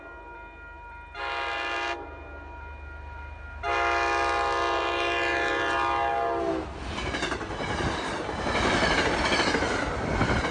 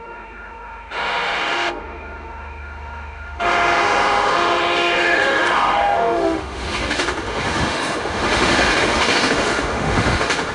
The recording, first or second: first